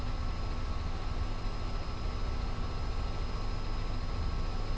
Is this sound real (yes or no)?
yes